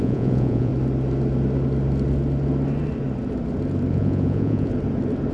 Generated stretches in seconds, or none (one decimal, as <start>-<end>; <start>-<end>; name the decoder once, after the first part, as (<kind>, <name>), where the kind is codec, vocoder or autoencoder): 0.0-0.7 (vocoder, Vocos); 3.9-4.7